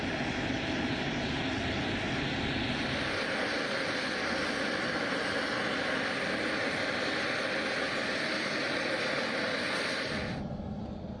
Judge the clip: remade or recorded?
recorded